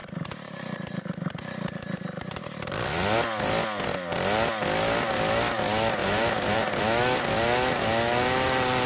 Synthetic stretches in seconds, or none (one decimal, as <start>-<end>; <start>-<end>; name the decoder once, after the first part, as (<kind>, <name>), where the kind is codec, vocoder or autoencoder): 0.0-2.8 (vocoder, BigVGAN v2); 6.0-6.8